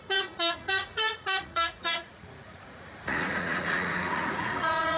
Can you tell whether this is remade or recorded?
remade